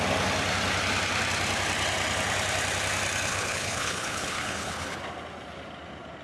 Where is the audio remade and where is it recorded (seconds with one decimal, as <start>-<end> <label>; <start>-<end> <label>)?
0.0-3.3 recorded; 3.3-5.0 remade; 5.0-6.2 recorded

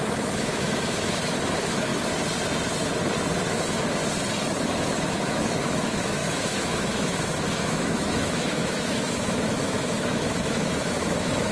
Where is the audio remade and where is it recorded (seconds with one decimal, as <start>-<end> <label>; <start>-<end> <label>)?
0.0-1.9 remade; 1.9-3.5 recorded; 3.5-4.0 remade; 4.0-4.6 recorded; 4.6-11.5 remade

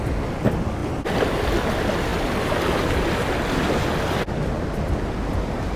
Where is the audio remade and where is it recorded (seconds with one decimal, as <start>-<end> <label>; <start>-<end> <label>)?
0.0-5.8 recorded

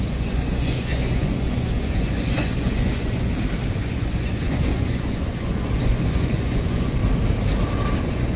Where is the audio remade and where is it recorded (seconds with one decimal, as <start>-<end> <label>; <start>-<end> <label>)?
0.0-3.3 remade; 3.3-3.8 recorded; 3.8-7.0 remade; 7.0-8.0 recorded; 8.0-8.4 remade

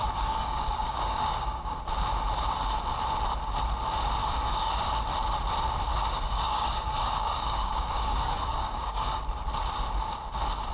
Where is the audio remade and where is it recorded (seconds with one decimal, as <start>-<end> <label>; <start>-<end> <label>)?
0.0-1.8 remade; 1.8-4.2 recorded; 4.2-4.9 remade; 4.9-5.9 recorded; 5.9-9.2 remade; 9.2-10.7 recorded